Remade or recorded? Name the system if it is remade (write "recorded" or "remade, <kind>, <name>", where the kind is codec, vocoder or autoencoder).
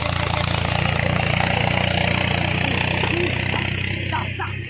recorded